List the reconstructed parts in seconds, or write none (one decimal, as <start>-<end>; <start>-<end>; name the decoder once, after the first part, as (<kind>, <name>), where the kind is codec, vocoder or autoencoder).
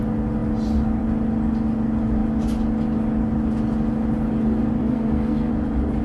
4.8-5.5 (codec, SNAC)